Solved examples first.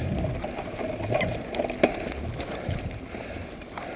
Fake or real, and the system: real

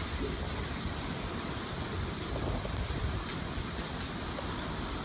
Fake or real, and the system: real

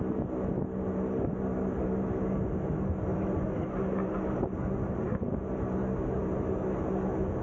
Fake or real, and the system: real